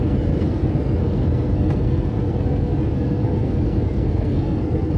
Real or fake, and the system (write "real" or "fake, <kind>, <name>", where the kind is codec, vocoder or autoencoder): fake, codec, SNAC